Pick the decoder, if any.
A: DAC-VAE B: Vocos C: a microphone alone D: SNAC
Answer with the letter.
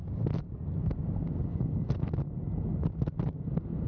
C